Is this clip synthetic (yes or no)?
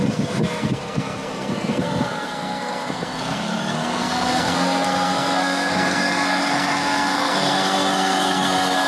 yes